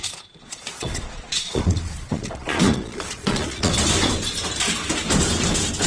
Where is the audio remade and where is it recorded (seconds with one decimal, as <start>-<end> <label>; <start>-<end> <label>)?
0.0-3.7 remade; 3.7-5.9 recorded